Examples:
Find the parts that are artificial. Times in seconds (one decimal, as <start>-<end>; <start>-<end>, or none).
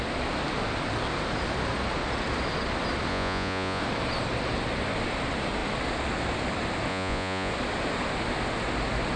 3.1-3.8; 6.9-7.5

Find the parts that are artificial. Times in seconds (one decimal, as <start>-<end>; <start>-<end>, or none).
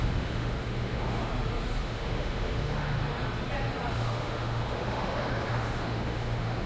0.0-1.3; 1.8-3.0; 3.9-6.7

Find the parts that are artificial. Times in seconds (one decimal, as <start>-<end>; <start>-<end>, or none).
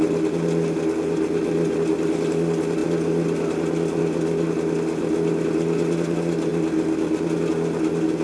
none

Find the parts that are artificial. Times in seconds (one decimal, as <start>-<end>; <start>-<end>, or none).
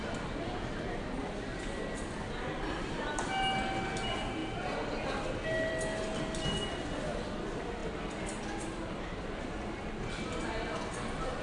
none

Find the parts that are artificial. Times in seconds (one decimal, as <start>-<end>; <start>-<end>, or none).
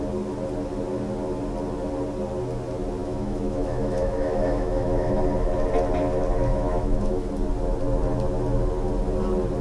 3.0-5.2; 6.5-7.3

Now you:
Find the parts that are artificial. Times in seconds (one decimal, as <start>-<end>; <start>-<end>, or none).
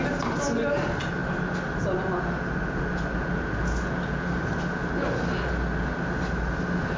none